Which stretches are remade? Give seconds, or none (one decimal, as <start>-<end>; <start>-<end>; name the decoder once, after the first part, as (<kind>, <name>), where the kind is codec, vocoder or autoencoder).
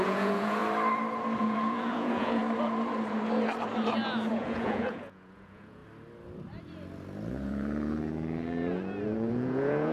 0.0-0.6 (vocoder, Vocos); 1.4-2.4; 4.3-5.8; 7.3-9.9